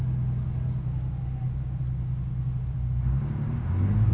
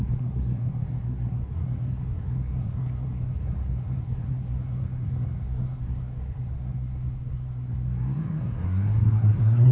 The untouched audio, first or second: first